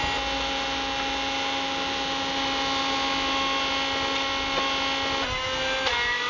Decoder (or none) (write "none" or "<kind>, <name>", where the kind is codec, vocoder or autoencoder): none